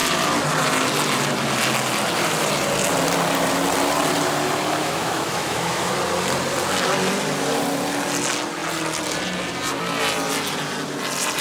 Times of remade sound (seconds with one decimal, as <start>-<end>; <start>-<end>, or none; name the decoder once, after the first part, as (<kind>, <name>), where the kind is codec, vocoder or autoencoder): 4.8-5.9 (autoencoder, DAC-VAE)

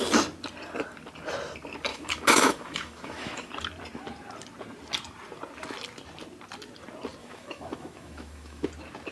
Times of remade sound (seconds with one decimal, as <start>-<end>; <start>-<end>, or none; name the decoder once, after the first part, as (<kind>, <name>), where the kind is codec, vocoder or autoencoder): 1.9-3.5 (autoencoder, DAC-VAE); 7.2-8.7